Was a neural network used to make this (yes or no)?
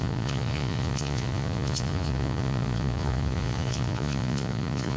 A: yes